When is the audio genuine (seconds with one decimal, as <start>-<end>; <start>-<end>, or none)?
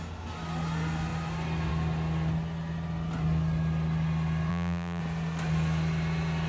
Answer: 0.0-4.5; 5.0-6.5